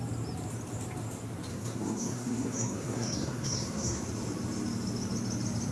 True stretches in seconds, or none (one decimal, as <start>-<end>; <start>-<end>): 0.0-1.5; 4.0-5.7